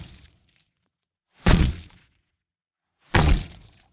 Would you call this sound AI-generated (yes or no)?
yes